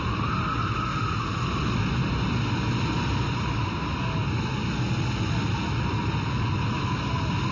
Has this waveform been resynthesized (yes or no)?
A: no